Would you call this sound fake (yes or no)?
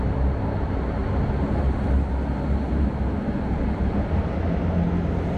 no